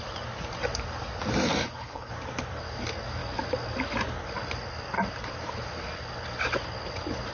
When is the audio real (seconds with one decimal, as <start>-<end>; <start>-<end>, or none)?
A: 0.0-1.6; 2.1-7.3